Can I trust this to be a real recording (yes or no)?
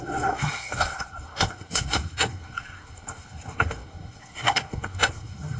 no